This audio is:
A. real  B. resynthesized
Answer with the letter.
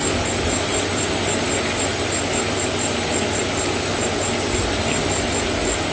A